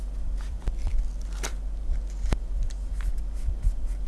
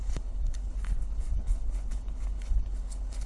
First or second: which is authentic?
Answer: first